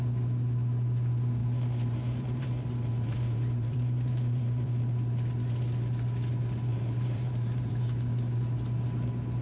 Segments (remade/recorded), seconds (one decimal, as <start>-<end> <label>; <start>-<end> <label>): 0.0-1.4 recorded; 1.4-4.8 remade; 4.8-6.7 recorded; 6.7-7.7 remade; 7.7-9.4 recorded